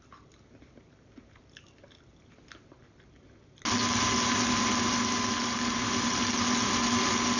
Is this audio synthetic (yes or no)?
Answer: no